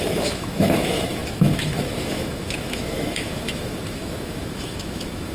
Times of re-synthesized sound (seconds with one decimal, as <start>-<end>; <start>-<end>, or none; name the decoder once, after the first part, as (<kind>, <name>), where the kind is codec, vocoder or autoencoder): 0.0-5.3 (autoencoder, DAC-VAE)